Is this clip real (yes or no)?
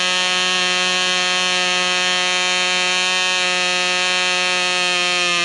yes